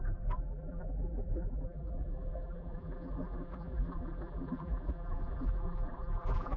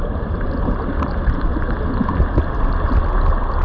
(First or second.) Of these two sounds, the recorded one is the second